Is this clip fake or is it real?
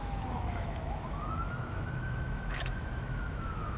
fake